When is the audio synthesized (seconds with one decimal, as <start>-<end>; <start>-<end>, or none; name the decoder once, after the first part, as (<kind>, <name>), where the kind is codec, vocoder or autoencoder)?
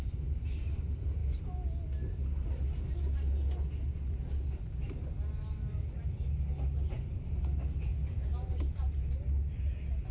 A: none